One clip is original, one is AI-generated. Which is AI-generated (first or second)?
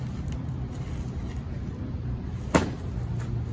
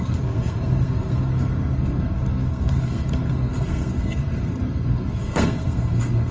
second